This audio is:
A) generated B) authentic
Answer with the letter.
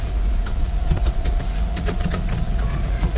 A